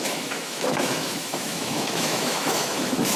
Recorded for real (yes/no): no